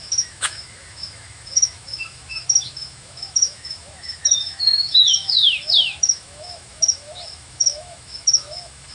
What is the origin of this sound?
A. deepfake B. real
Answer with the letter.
A